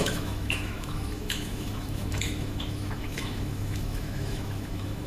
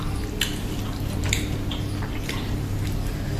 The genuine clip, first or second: second